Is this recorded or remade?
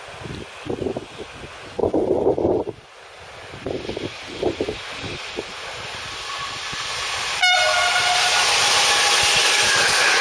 recorded